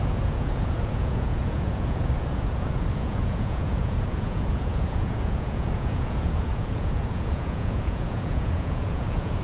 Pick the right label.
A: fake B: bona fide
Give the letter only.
A